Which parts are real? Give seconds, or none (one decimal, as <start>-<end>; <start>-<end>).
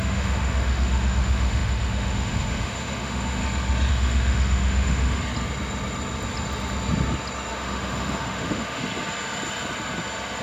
3.4-3.9; 5.2-7.5; 8.8-10.4